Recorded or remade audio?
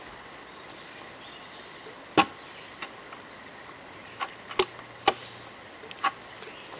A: recorded